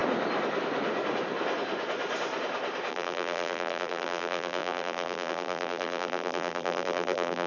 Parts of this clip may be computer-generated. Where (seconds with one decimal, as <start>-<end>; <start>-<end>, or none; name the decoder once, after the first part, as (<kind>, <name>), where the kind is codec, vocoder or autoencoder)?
2.9-7.5 (vocoder, BigVGAN v2)